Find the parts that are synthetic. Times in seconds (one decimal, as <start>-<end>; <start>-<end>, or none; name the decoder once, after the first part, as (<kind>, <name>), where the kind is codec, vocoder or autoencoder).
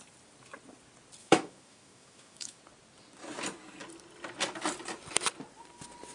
1.2-2.6 (autoencoder, DAC-VAE)